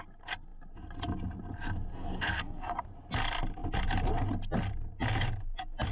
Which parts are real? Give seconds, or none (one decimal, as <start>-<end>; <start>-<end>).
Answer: 0.0-1.9; 2.8-5.9